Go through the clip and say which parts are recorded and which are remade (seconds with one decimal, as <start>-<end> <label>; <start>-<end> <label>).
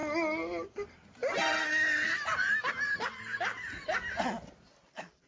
0.0-5.3 recorded